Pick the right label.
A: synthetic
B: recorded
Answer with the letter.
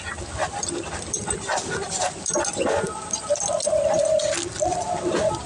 B